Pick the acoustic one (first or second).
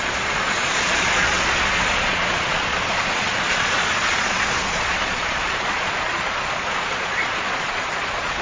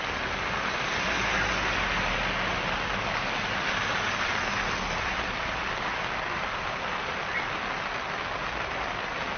second